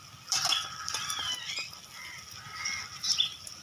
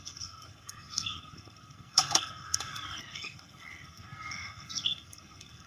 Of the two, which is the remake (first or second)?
second